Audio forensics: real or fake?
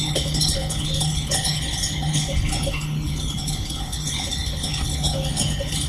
fake